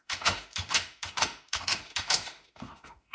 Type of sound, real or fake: fake